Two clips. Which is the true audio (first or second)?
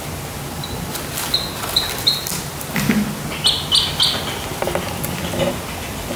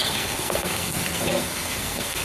first